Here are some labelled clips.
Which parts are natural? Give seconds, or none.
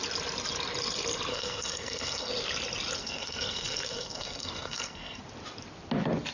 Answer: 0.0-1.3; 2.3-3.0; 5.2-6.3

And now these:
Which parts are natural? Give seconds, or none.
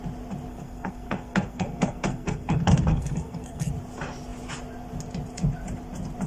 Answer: 0.0-0.5; 3.7-6.3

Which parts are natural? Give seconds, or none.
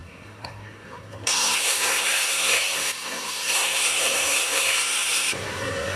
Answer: none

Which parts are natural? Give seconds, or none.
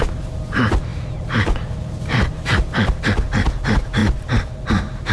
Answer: 0.0-5.1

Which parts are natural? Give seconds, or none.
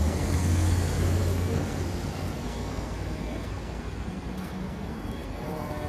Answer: none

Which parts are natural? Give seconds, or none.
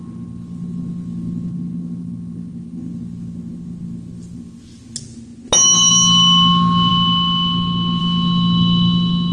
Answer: 0.0-9.3